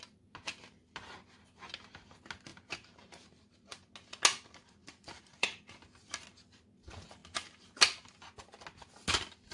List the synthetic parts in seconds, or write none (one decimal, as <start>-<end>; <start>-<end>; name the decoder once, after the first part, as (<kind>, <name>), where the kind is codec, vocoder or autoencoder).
2.5-3.9 (vocoder, BigVGAN v2); 4.8-5.6